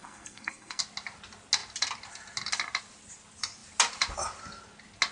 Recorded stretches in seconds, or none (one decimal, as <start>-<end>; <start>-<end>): 0.8-5.1